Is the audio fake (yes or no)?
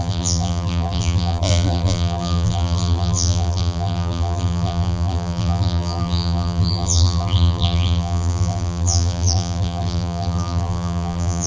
yes